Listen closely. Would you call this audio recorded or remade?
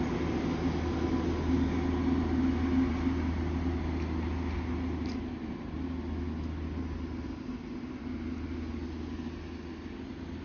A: recorded